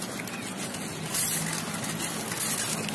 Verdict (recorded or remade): recorded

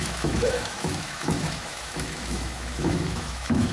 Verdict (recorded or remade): remade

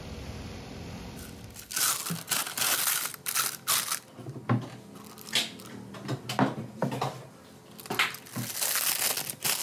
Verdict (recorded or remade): recorded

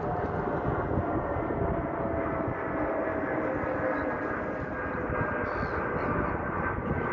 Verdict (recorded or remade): recorded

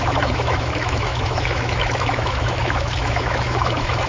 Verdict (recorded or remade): remade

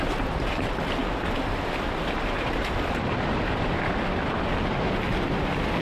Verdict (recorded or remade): recorded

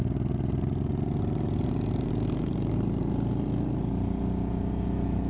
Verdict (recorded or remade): recorded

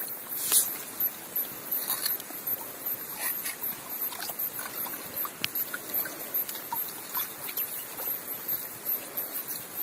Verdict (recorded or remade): recorded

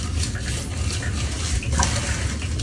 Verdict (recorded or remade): recorded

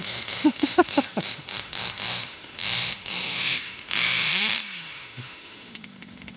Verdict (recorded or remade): remade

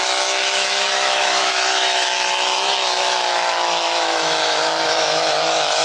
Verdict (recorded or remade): remade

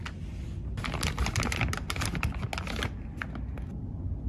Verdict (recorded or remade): recorded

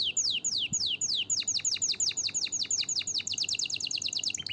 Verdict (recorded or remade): recorded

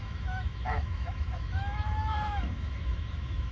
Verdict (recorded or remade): remade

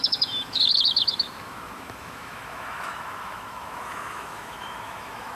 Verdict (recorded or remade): remade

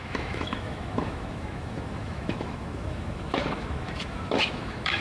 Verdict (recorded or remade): remade